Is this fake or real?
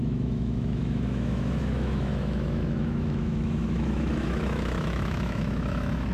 fake